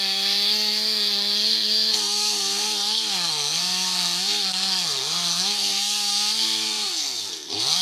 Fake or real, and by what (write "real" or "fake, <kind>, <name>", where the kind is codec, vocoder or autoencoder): fake, codec, SNAC